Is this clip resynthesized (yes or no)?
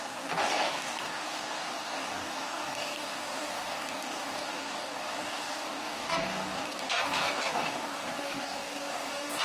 yes